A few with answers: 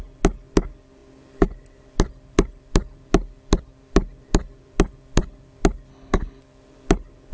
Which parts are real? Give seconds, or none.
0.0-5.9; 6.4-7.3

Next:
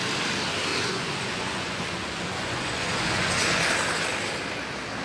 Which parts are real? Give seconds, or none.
0.0-0.7; 3.7-5.0